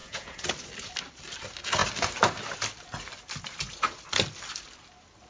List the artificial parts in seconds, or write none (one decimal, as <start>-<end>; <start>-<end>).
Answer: 0.0-0.5